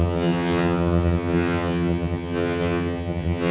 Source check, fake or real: fake